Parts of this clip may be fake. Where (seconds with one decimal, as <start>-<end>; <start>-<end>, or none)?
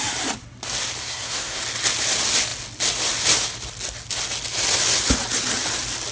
1.0-1.6